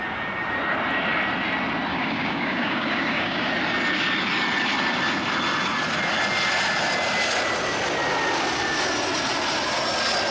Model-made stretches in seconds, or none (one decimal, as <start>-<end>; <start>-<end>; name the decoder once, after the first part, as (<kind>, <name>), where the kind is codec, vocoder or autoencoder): 1.9-3.5 (codec, DAC)